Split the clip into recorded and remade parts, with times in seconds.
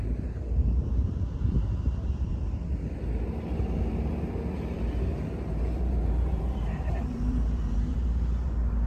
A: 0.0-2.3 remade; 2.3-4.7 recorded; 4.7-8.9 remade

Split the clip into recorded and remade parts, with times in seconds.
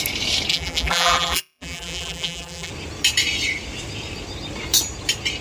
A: 0.0-0.5 recorded; 0.5-2.7 remade; 2.7-5.4 recorded